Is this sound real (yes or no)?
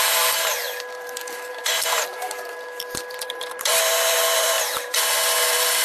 no